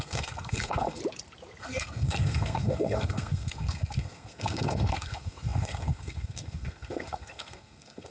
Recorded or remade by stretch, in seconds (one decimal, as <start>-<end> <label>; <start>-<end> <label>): 0.0-1.0 remade; 1.0-1.6 recorded; 1.6-8.1 remade